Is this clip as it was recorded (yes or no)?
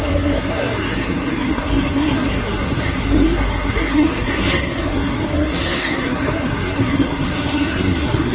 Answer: no